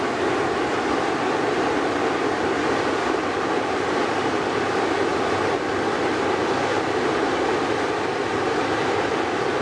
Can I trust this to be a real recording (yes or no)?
no